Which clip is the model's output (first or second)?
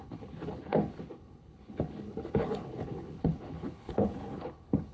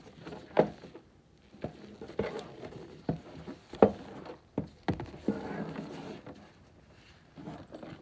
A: first